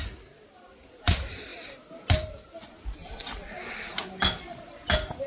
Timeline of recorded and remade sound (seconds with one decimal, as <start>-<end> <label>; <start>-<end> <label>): 0.0-5.3 recorded